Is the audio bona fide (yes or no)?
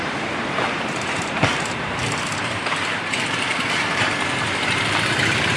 no